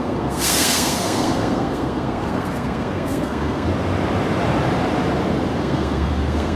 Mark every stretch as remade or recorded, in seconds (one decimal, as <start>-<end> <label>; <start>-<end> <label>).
0.0-3.7 remade; 3.7-5.6 recorded; 5.6-6.6 remade